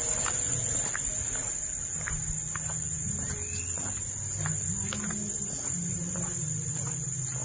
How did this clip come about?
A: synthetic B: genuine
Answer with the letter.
B